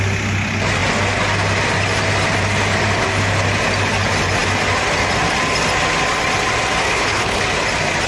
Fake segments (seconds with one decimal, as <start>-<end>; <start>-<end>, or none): 6.8-7.4